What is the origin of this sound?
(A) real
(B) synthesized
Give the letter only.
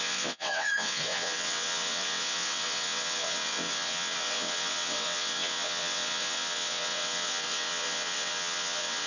B